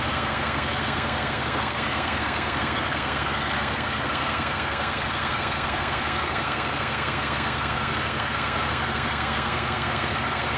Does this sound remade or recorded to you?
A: remade